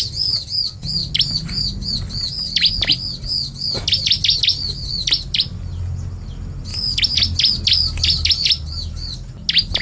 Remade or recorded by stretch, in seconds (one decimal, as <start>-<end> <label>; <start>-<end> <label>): 0.0-9.8 recorded